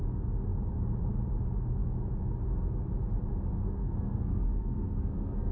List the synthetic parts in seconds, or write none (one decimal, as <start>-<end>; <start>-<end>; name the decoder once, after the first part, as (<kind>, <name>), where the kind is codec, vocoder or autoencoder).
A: 3.6-5.5 (codec, SNAC)